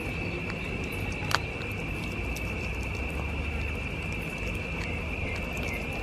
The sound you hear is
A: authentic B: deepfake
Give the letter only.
A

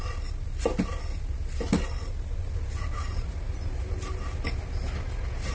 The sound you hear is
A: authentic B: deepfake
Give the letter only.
A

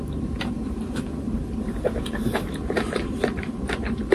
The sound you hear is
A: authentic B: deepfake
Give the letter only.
B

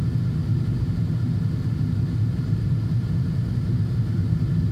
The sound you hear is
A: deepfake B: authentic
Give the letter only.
B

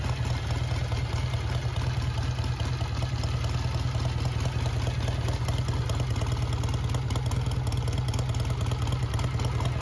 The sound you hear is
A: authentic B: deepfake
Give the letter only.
A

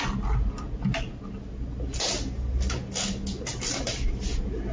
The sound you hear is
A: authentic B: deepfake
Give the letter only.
A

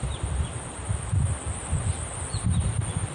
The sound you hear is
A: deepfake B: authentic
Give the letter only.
B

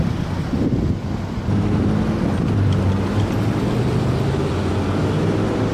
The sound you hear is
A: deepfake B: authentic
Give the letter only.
B